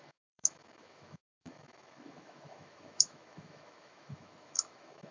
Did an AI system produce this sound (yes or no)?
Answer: yes